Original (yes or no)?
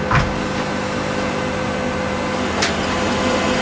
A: yes